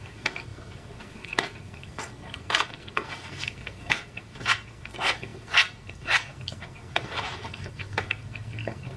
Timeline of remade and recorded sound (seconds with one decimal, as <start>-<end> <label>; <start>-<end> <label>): 0.0-9.0 remade